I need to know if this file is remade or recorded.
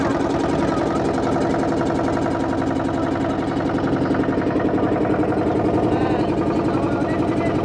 recorded